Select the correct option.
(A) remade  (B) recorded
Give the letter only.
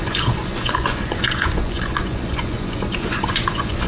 A